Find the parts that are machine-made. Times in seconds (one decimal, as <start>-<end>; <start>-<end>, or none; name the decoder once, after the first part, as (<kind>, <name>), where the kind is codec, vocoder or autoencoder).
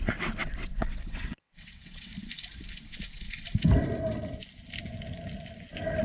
0.0-2.1 (vocoder, WaveNeXt)